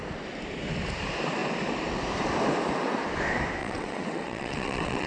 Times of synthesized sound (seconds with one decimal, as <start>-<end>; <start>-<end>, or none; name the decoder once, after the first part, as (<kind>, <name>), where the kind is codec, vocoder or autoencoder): 3.6-5.1 (vocoder, WaveNeXt)